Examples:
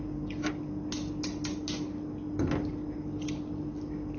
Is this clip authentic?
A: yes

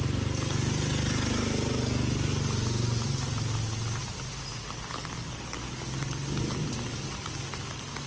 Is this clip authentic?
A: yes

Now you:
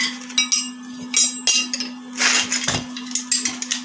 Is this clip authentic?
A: yes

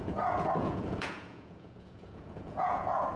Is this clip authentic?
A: no